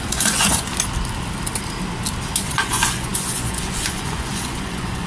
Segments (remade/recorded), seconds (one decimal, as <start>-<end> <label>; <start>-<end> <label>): 0.0-0.7 remade; 0.7-2.4 recorded; 2.4-5.1 remade